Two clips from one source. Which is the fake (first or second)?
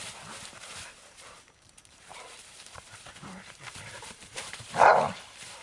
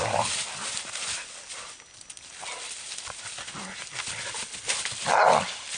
first